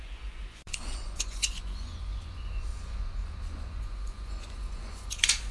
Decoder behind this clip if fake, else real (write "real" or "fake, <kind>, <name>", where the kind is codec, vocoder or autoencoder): fake, vocoder, Vocos